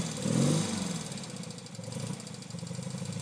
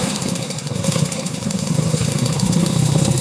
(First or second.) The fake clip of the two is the second